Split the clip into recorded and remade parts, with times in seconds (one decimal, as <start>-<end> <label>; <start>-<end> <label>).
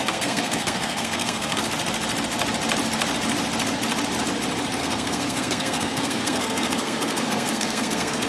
0.0-1.6 remade; 1.6-4.8 recorded; 4.8-8.3 remade